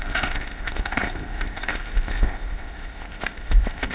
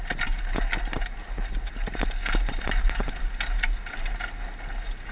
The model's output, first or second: first